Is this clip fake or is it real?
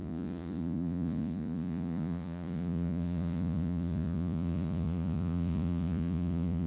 fake